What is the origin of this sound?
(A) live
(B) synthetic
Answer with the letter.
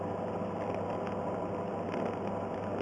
A